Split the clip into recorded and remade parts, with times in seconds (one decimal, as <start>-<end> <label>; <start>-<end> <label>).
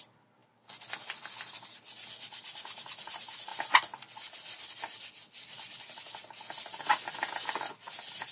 0.0-8.3 recorded